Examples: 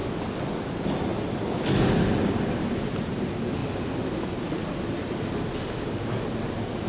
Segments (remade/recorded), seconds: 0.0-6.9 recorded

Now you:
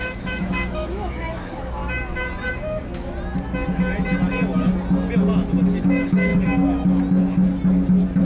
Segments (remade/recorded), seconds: 0.0-1.8 remade; 1.8-5.8 recorded; 5.8-6.3 remade; 6.3-8.2 recorded

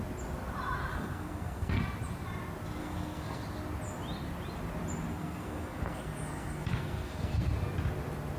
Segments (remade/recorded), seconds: 0.0-0.9 recorded; 0.9-1.8 remade; 1.8-2.8 recorded; 2.8-3.4 remade; 3.4-5.1 recorded; 5.1-7.5 remade; 7.5-8.4 recorded

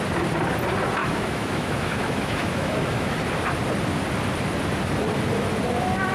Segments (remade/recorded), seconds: 0.0-1.0 recorded; 1.0-3.2 remade; 3.2-6.1 recorded